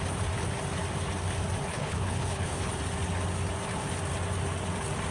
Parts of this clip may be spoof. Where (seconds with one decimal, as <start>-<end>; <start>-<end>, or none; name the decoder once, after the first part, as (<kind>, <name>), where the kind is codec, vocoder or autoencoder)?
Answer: 1.7-2.7 (codec, HILCodec)